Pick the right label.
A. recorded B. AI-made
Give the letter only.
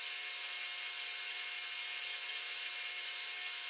A